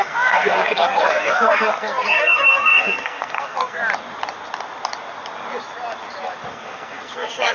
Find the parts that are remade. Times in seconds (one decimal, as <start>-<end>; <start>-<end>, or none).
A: 0.0-3.8; 6.5-7.5